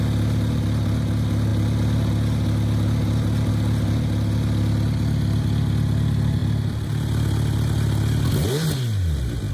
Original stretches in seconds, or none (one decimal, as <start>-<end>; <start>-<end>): 0.0-9.5